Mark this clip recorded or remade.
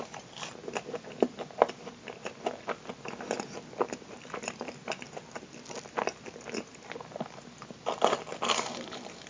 recorded